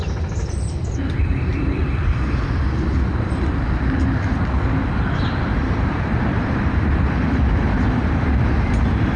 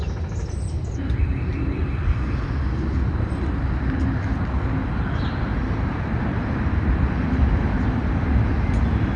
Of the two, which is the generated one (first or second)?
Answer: first